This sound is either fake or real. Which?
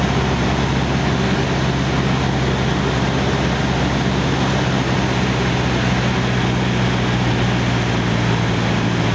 real